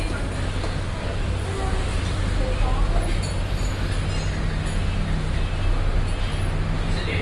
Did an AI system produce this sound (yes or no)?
no